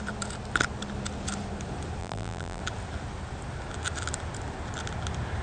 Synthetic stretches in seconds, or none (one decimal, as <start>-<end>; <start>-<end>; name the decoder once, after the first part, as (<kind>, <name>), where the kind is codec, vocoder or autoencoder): 2.0-2.6 (vocoder, BigVGAN v2)

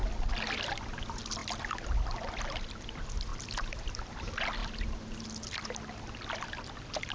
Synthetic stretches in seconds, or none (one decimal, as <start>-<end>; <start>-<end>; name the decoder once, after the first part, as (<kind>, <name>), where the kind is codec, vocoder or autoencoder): none

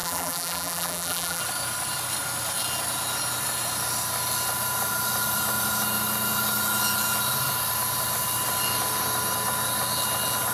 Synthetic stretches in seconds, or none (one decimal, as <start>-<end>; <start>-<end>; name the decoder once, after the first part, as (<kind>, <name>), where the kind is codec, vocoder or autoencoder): 0.0-1.4 (vocoder, BigVGAN v2)